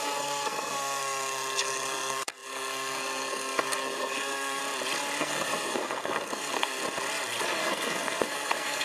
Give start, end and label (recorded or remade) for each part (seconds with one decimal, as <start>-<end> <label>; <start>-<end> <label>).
0.0-4.6 remade; 4.6-5.2 recorded; 5.2-6.8 remade; 6.8-7.6 recorded; 7.6-8.8 remade